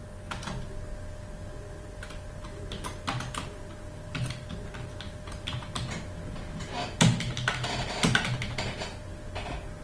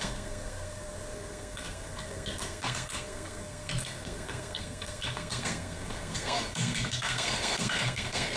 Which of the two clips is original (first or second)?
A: first